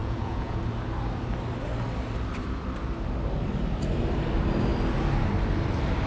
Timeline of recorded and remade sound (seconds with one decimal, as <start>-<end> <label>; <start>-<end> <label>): 0.0-0.6 remade; 0.6-6.1 recorded